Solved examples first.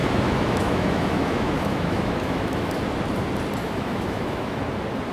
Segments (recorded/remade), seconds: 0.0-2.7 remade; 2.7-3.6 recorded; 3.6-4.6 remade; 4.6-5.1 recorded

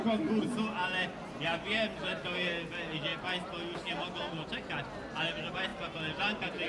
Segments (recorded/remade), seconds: 0.0-6.7 recorded

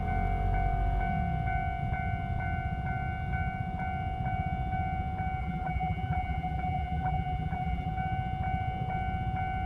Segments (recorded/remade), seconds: 0.0-5.4 recorded; 5.4-7.9 remade; 7.9-9.7 recorded

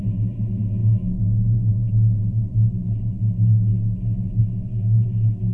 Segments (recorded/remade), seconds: 0.0-5.5 recorded

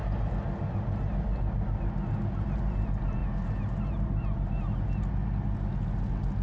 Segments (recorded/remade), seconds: 0.0-6.4 recorded